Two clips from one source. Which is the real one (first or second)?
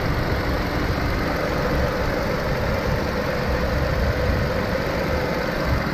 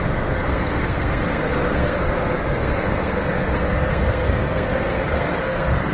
first